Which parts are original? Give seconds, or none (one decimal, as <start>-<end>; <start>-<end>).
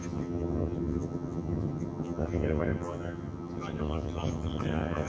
none